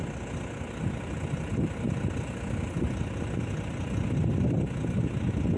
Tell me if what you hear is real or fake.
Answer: real